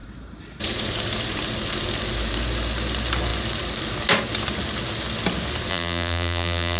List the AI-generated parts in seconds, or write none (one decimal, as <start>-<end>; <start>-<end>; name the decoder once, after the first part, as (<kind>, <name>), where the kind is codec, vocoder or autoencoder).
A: 5.7-6.8 (vocoder, BigVGAN v2)